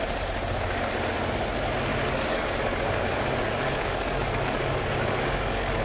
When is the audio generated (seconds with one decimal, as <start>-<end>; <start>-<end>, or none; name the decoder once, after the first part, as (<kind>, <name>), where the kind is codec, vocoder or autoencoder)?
1.9-5.8 (codec, DAC)